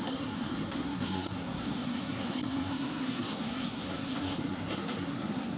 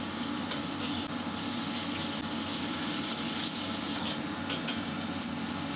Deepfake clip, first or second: first